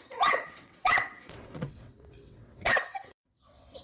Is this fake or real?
fake